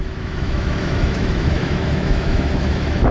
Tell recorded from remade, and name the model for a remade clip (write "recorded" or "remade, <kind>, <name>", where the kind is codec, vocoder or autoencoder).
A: remade, autoencoder, DAC-VAE